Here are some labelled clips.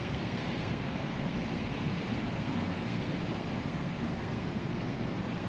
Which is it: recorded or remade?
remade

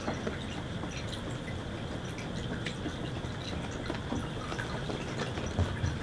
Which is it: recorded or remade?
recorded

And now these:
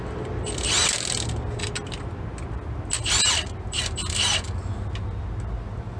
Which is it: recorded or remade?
recorded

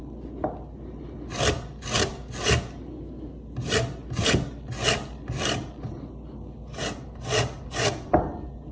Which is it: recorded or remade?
recorded